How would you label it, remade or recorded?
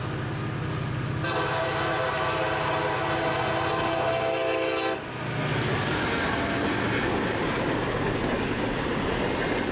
recorded